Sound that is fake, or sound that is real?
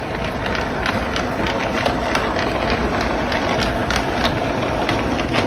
real